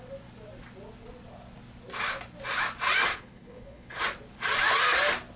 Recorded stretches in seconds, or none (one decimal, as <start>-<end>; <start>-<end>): 0.0-3.1; 4.0-5.4